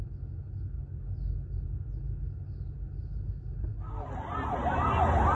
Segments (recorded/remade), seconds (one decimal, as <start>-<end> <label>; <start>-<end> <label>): 0.0-5.3 recorded